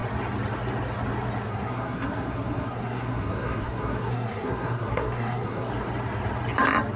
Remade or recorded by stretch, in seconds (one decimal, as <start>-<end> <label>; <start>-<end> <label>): 0.0-1.5 recorded; 1.5-5.7 remade; 5.7-7.0 recorded